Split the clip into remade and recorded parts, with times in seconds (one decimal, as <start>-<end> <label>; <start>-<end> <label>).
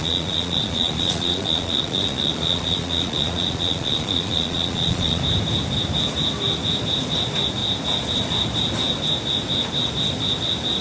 0.0-5.2 remade; 5.2-10.8 recorded